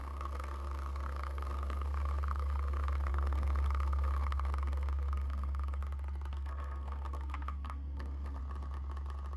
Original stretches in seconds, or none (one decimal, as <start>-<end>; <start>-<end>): 5.8-6.3; 8.4-9.4